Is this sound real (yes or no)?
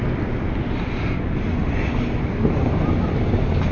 yes